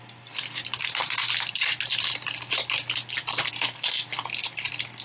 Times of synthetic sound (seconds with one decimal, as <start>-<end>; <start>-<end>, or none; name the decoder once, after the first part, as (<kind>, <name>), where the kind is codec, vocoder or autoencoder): none